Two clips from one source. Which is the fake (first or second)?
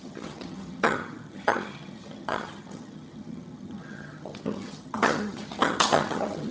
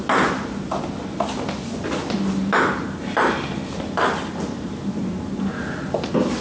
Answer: first